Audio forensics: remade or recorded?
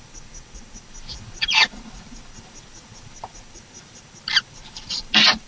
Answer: recorded